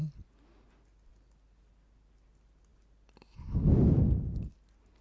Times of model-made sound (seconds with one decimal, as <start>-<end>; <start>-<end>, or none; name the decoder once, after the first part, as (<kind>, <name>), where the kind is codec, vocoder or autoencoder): none